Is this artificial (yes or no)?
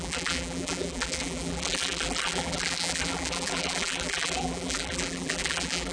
yes